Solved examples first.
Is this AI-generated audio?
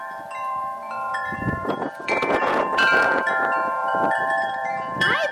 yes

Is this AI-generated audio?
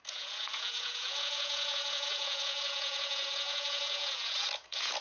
yes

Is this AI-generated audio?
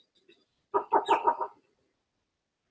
no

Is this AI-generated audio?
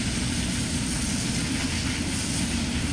no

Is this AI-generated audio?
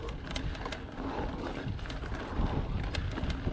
no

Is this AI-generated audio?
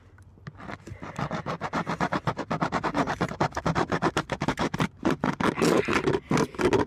no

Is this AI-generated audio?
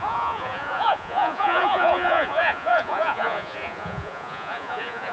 yes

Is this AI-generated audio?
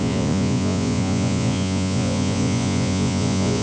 yes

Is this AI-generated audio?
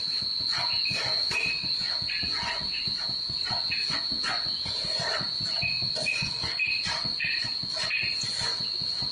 yes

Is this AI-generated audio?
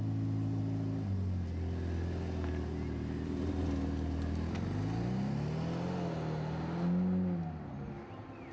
no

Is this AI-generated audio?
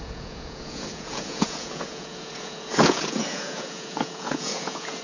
yes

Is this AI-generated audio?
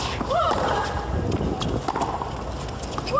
no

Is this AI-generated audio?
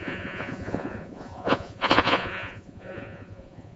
yes